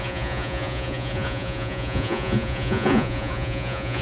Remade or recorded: remade